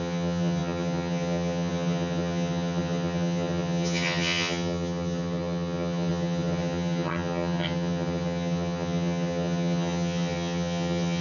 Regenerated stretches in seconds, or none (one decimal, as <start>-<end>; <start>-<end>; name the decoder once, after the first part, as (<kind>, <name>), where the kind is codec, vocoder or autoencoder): 0.0-11.2 (vocoder, HiFi-GAN)